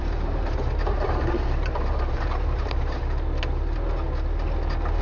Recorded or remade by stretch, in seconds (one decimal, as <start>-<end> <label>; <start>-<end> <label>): 0.0-3.0 remade; 3.0-5.0 recorded